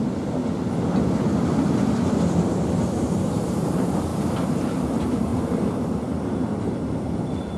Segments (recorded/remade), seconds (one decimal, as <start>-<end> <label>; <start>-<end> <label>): 0.0-0.4 remade; 0.4-2.4 recorded; 2.4-4.1 remade; 4.1-4.6 recorded; 4.6-7.6 remade